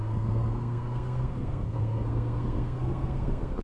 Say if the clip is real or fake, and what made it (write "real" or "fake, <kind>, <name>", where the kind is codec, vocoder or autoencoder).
fake, codec, SNAC